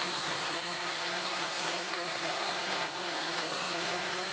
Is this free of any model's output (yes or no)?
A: no